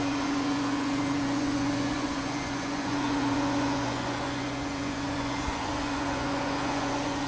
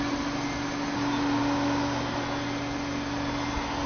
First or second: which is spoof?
first